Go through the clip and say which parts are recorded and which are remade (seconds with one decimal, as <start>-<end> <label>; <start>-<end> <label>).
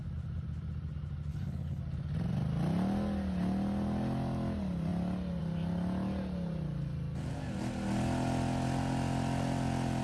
0.0-1.3 recorded; 1.3-1.8 remade; 1.8-10.0 recorded